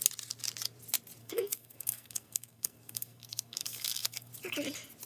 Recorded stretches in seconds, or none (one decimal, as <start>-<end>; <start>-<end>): 0.0-1.2; 4.3-5.1